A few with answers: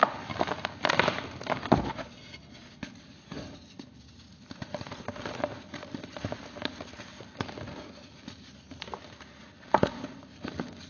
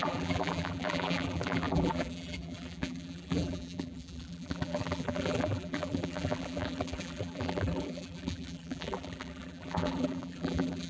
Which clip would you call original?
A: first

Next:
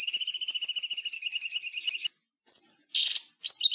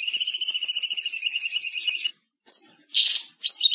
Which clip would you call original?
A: first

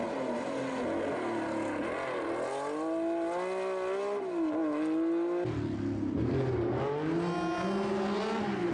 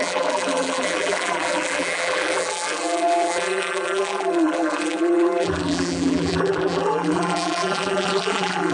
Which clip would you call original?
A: first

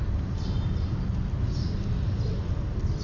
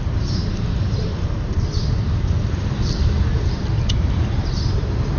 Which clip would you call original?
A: first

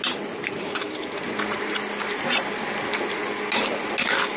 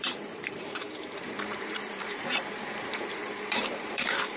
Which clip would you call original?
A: first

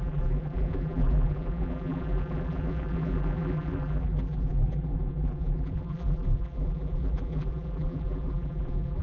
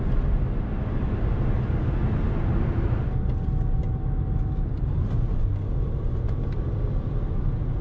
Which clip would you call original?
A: second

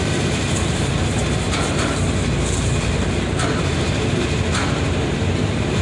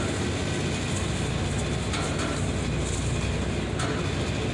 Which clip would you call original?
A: second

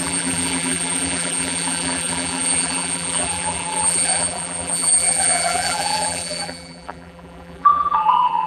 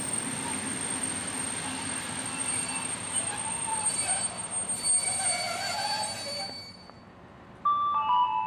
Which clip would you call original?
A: second